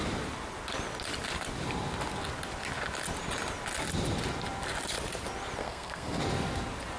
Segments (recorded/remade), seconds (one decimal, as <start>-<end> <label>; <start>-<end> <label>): 0.0-5.6 recorded; 5.6-6.2 remade; 6.2-7.0 recorded